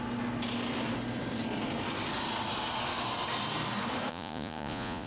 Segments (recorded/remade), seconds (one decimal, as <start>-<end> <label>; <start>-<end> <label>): 0.0-4.1 recorded; 4.1-5.1 remade